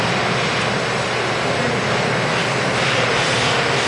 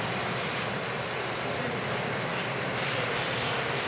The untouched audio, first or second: first